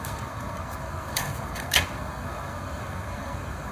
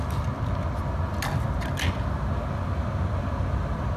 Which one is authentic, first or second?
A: second